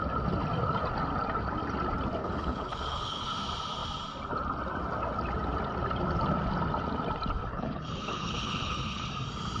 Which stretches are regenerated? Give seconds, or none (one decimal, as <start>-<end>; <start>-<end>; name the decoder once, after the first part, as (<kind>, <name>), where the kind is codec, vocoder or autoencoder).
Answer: 2.2-3.3 (codec, HILCodec); 7.5-9.1